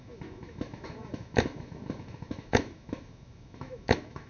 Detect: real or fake fake